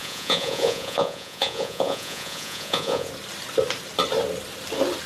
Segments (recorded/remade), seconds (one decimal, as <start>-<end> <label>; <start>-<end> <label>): 0.0-3.1 remade; 3.1-5.1 recorded

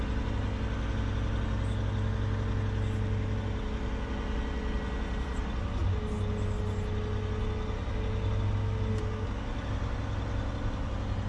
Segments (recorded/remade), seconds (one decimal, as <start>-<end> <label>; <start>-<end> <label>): 0.0-11.3 recorded

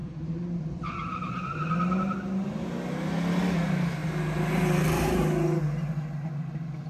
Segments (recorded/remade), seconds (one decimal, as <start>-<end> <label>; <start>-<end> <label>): 0.0-0.6 remade; 0.6-6.9 recorded

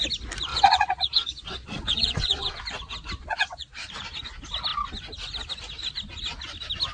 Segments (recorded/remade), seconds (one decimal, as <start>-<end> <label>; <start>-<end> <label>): 0.0-0.5 recorded; 0.5-2.6 remade; 2.6-3.2 recorded; 3.2-3.8 remade; 3.8-6.9 recorded

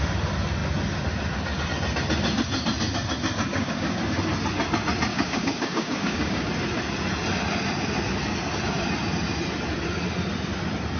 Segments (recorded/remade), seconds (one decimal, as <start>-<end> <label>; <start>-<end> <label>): 0.0-3.5 recorded; 3.5-4.0 remade; 4.0-5.1 recorded; 5.1-6.5 remade; 6.5-11.0 recorded

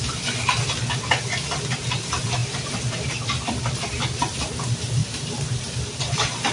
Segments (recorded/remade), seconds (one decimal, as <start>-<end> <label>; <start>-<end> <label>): 0.0-2.4 recorded; 2.4-3.8 remade; 3.8-5.0 recorded; 5.0-6.0 remade; 6.0-6.5 recorded